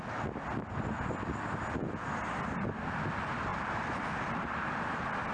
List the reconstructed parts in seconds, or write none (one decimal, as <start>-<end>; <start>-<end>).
3.5-4.8